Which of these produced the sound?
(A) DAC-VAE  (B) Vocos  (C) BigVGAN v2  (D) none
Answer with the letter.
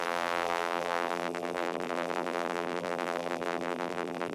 C